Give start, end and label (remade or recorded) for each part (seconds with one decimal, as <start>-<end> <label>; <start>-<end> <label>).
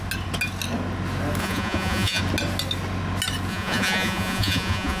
0.0-1.4 recorded; 1.4-2.2 remade; 2.2-3.5 recorded; 3.5-5.0 remade